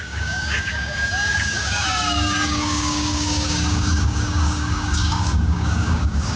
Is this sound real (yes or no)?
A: no